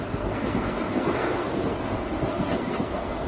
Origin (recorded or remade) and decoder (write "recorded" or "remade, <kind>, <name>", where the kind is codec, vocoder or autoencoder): remade, codec, SNAC